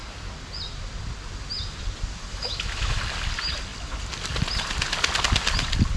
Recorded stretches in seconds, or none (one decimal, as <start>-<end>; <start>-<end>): 0.0-2.3; 3.0-6.0